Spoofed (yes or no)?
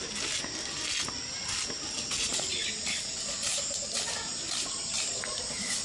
no